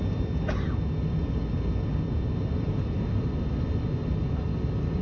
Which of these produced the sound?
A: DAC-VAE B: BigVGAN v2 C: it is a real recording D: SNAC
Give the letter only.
C